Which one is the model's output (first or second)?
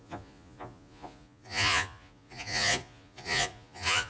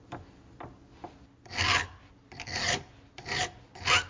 first